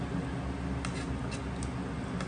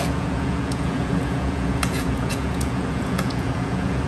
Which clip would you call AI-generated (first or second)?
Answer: second